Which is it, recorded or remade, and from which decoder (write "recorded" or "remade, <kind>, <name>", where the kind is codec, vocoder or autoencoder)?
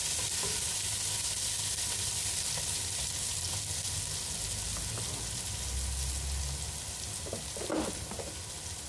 recorded